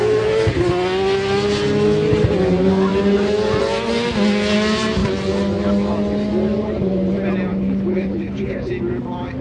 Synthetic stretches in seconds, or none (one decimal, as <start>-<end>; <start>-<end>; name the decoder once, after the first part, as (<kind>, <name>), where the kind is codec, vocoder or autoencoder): 7.5-8.7 (codec, HILCodec)